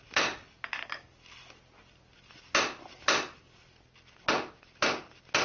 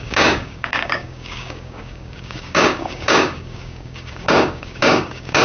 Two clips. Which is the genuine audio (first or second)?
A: first